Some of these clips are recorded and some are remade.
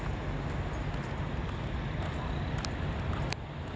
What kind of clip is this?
recorded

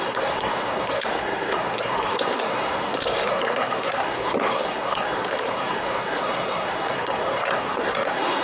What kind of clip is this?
remade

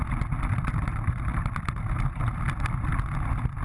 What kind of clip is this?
recorded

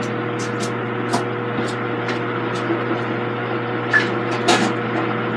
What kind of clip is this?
recorded